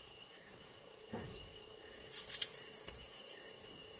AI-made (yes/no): yes